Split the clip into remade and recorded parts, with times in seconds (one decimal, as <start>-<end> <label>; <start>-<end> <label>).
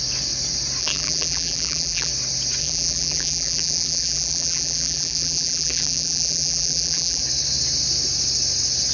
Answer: 0.0-0.8 recorded; 0.8-2.1 remade; 2.1-2.6 recorded; 2.6-7.2 remade; 7.2-8.9 recorded